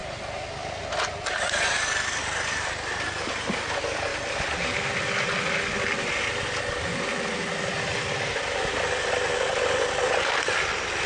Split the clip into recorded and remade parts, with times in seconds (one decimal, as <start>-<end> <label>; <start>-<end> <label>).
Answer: 0.0-11.1 recorded